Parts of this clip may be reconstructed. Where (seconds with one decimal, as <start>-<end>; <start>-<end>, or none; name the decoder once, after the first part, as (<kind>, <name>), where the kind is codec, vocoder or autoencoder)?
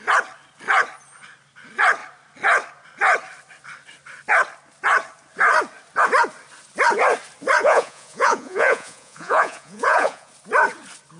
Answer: 7.6-10.3 (vocoder, Vocos)